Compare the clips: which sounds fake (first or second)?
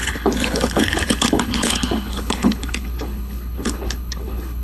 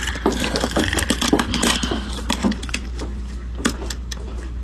first